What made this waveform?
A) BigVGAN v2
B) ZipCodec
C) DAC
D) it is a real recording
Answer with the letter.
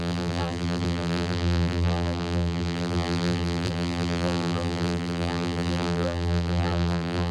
A